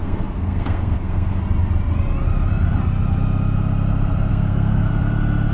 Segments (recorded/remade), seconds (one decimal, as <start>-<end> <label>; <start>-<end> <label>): 0.0-1.4 remade; 1.4-4.3 recorded; 4.3-4.9 remade; 4.9-5.5 recorded